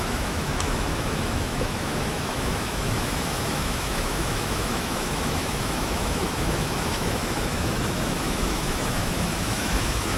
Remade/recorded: remade